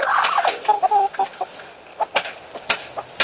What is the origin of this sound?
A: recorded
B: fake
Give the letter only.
B